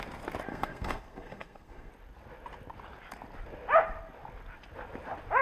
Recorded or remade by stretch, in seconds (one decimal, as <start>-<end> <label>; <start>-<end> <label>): 0.0-0.5 recorded; 0.5-1.9 remade; 1.9-5.4 recorded